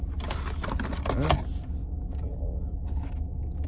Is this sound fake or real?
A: real